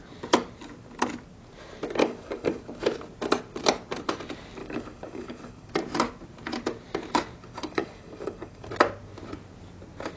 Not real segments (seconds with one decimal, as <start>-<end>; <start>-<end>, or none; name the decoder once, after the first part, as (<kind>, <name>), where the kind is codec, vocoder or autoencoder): 2.0-2.6 (codec, DAC); 4.6-5.7; 7.5-8.7